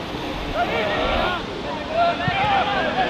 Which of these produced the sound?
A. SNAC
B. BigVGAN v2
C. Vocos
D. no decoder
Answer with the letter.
D